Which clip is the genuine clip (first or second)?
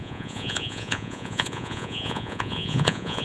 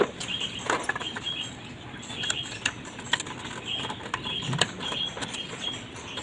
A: second